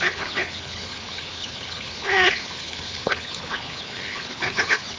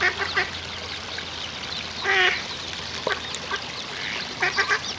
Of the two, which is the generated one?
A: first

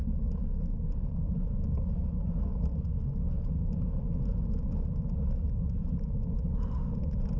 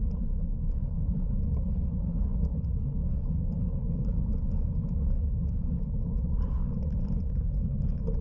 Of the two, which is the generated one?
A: second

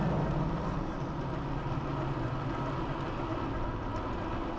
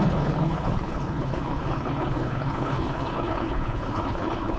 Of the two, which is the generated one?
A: second